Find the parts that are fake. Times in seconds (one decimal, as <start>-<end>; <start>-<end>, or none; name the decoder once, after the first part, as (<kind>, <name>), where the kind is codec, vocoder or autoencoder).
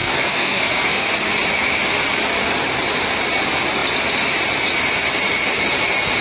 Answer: 0.0-1.1 (codec, SNAC)